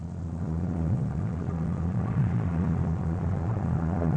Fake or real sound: fake